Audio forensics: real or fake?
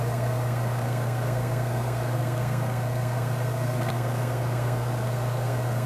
fake